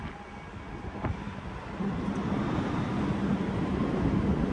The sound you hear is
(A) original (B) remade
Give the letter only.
A